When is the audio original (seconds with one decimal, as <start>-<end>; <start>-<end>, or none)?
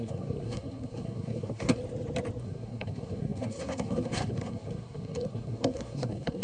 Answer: 1.8-2.4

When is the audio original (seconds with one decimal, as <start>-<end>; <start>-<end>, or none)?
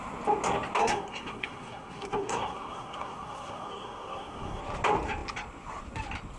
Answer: 0.0-0.8; 4.6-6.4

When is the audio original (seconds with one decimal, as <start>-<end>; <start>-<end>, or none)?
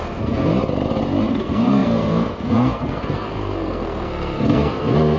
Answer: 0.5-1.3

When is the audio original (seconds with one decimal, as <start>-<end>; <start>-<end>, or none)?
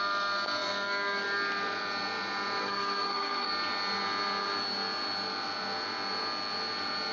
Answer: 0.0-2.6; 3.5-7.1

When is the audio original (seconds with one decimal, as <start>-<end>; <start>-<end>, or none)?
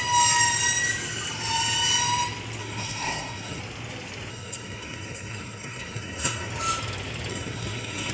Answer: 0.0-2.6; 3.6-4.3; 6.5-7.3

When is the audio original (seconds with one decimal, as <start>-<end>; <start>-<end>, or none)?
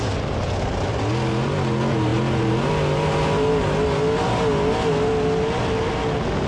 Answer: 0.0-6.5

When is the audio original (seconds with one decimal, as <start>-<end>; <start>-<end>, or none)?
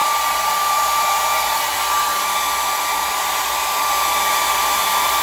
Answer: 0.0-5.2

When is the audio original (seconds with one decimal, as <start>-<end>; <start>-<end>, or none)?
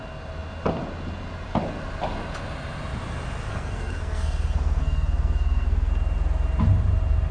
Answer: 0.0-3.5; 5.9-7.3